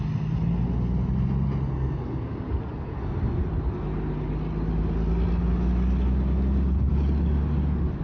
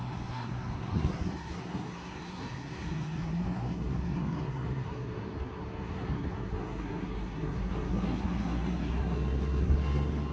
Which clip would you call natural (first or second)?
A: first